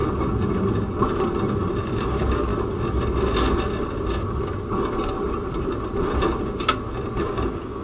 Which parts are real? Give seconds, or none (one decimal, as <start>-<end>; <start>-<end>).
0.0-1.8; 2.5-7.2